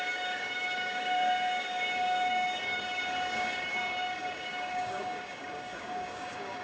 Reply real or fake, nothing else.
fake